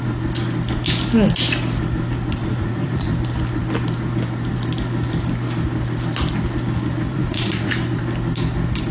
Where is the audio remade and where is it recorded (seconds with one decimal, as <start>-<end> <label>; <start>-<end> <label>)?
0.0-2.4 recorded; 2.4-3.1 remade; 3.1-7.1 recorded; 7.1-7.7 remade; 7.7-8.9 recorded